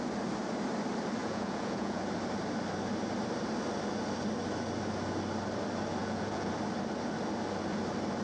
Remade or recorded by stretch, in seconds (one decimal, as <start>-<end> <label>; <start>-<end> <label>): 0.0-1.2 recorded; 1.2-2.0 remade; 2.0-6.0 recorded; 6.0-6.5 remade; 6.5-8.2 recorded

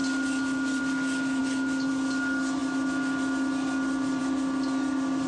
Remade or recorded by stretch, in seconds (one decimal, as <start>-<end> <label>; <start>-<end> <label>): 0.0-5.3 recorded

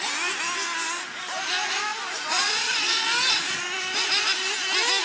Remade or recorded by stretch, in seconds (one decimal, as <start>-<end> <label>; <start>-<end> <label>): 0.0-5.0 recorded